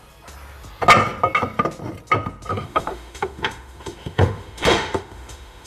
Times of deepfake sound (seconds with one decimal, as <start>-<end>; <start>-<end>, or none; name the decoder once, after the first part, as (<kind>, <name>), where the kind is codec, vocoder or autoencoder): 2.5-5.7 (autoencoder, DAC-VAE)